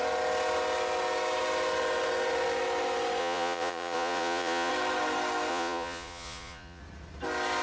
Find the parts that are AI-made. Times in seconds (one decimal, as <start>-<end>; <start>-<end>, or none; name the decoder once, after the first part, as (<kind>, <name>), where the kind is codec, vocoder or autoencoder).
3.2-4.7 (vocoder, Vocos); 5.5-6.8